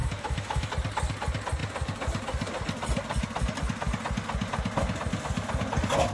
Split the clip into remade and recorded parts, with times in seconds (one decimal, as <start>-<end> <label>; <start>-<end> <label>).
0.0-0.7 remade; 0.7-6.1 recorded